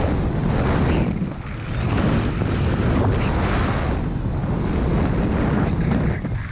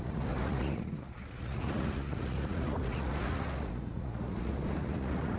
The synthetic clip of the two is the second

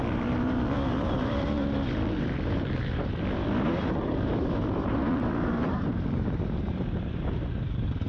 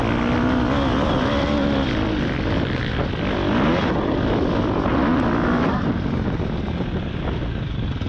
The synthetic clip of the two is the first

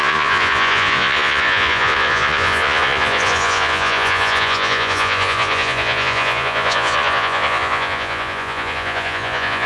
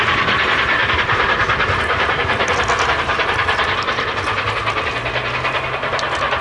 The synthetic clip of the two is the first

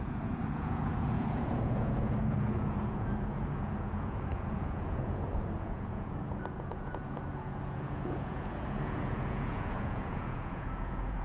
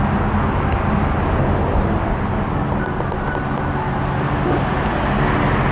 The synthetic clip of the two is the first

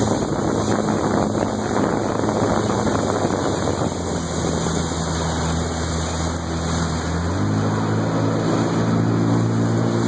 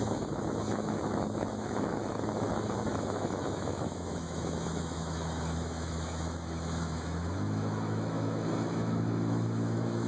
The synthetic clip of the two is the second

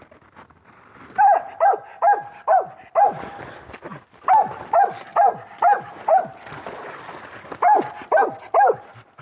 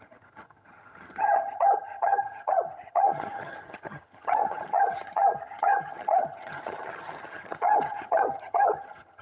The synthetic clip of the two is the second